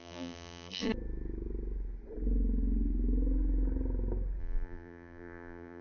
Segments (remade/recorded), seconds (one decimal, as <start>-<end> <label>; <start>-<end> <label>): 0.0-0.9 remade; 0.9-4.4 recorded; 4.4-5.8 remade